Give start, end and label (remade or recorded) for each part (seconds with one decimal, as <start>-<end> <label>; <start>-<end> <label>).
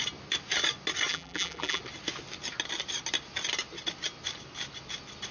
0.0-1.1 recorded; 1.1-1.8 remade; 1.8-5.3 recorded